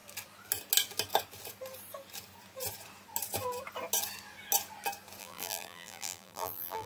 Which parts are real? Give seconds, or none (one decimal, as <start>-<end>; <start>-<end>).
0.0-5.2